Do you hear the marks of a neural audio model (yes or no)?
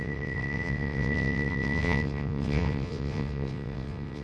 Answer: yes